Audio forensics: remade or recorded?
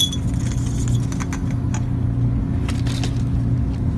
recorded